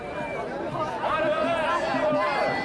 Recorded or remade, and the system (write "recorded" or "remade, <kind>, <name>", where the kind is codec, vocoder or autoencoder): recorded